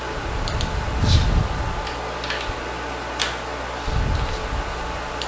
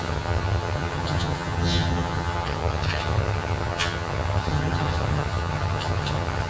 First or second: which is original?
first